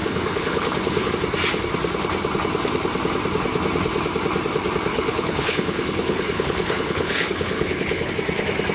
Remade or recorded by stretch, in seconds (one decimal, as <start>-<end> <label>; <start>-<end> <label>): 0.0-1.1 remade; 1.1-4.9 recorded; 4.9-8.1 remade; 8.1-8.7 recorded